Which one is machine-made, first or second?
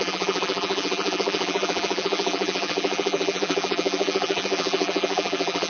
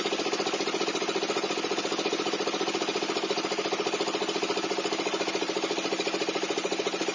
first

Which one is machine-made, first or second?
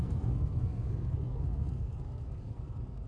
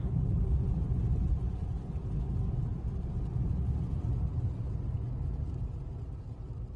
first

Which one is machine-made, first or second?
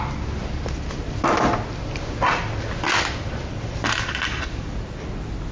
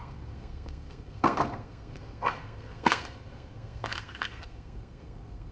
second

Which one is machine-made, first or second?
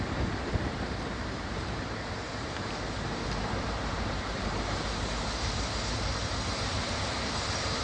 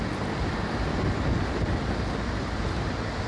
first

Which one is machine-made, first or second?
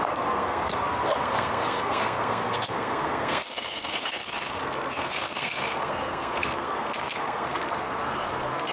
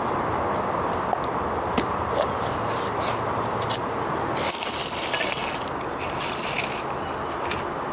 first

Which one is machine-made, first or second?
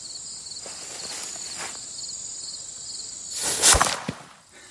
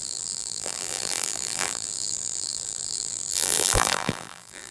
second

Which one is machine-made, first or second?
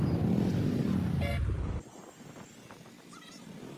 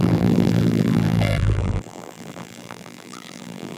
second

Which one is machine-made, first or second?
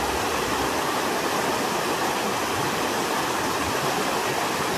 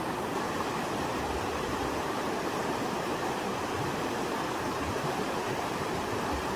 second